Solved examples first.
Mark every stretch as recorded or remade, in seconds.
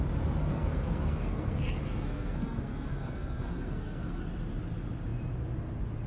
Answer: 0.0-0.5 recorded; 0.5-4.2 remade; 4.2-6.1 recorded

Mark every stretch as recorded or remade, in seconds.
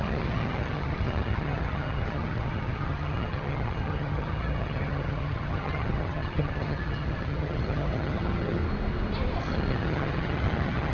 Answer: 0.0-8.6 remade; 8.6-9.4 recorded; 9.4-10.9 remade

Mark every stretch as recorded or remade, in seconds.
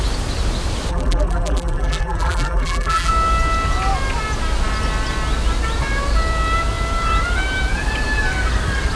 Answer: 0.0-0.9 recorded; 0.9-3.1 remade; 3.1-9.0 recorded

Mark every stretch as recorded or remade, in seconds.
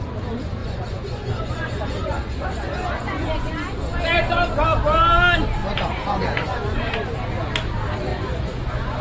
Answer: 0.0-0.6 recorded; 0.6-3.5 remade; 3.5-5.6 recorded; 5.6-6.9 remade; 6.9-8.1 recorded; 8.1-9.0 remade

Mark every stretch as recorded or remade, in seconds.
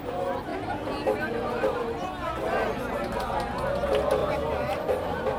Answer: 0.0-4.2 recorded; 4.2-5.4 remade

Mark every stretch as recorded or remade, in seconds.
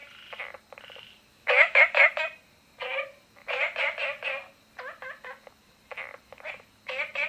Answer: 0.0-1.3 recorded; 1.3-1.8 remade; 1.8-7.3 recorded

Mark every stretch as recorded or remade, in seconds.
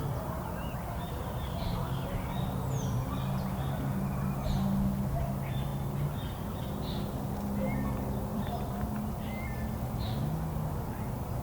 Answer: 0.0-8.3 recorded; 8.3-9.4 remade; 9.4-11.4 recorded